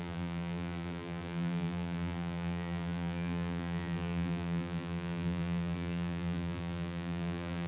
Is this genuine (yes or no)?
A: no